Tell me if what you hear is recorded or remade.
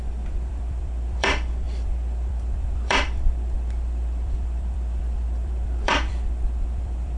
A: remade